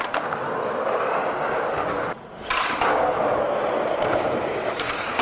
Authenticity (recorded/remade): recorded